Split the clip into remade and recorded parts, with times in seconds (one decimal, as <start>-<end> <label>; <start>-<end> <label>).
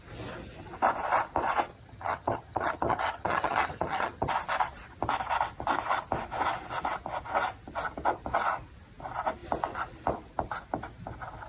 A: 0.0-1.7 recorded; 1.7-4.3 remade; 4.3-11.5 recorded